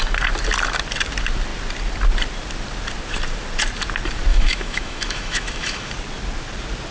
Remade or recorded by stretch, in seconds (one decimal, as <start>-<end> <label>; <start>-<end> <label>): 0.0-4.3 recorded; 4.3-5.9 remade; 5.9-6.9 recorded